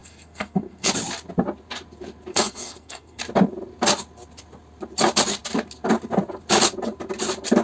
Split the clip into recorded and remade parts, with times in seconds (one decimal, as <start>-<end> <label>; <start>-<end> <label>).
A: 0.0-0.9 remade; 0.9-2.3 recorded; 2.3-3.2 remade; 3.2-7.6 recorded